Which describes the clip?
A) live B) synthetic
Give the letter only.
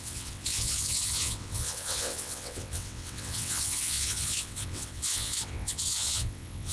B